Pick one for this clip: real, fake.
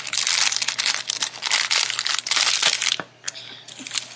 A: real